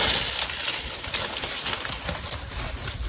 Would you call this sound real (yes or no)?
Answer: yes